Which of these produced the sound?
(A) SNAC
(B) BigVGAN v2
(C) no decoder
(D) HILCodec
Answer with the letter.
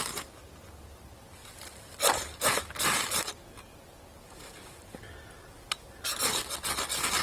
C